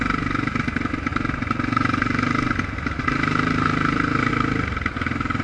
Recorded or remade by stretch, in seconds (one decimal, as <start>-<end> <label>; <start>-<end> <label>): 0.0-1.1 recorded; 1.1-4.3 remade; 4.3-5.4 recorded